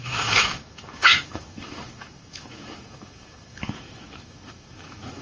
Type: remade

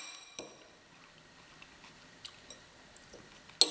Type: recorded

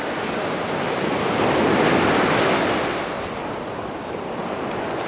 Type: recorded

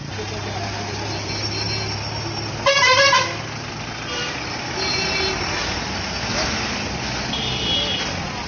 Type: recorded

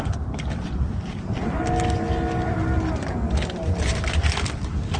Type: recorded